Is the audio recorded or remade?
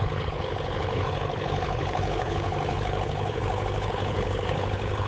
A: remade